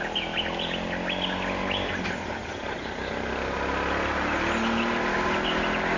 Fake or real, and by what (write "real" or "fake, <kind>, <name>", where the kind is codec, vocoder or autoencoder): real